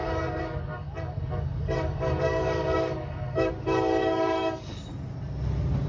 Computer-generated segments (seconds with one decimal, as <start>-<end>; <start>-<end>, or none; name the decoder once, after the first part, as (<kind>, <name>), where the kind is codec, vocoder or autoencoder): 0.0-3.5 (codec, DAC); 4.0-4.9